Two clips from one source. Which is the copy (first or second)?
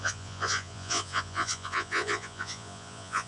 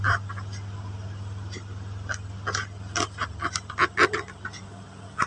first